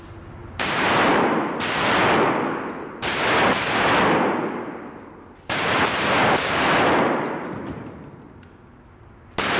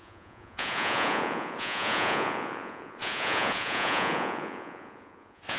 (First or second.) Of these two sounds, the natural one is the first